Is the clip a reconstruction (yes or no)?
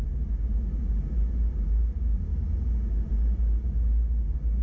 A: no